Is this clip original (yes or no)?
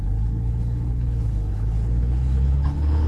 no